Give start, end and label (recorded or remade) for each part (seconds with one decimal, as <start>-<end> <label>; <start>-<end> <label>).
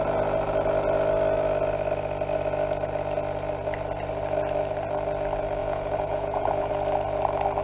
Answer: 0.0-5.6 recorded; 5.6-6.7 remade; 6.7-7.6 recorded